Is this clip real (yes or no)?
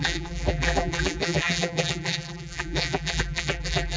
no